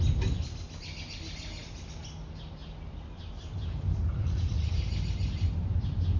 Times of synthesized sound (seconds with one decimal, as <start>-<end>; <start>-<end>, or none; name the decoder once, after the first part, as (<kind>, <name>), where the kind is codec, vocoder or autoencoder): 4.1-4.7 (vocoder, Vocos)